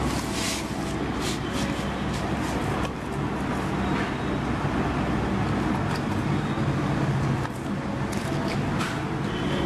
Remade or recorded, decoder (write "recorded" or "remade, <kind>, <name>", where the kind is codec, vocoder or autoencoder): recorded